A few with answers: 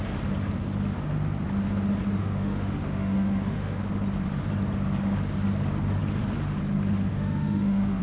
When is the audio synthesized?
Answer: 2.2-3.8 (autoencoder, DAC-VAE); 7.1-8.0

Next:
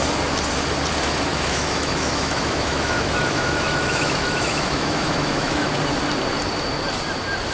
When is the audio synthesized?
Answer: 1.3-5.8 (autoencoder, DAC-VAE)

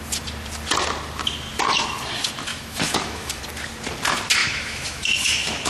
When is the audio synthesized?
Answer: 2.5-3.4 (autoencoder, DAC-VAE); 4.4-5.7